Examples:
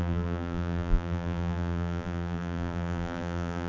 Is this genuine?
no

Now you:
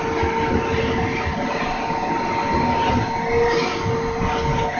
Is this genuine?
yes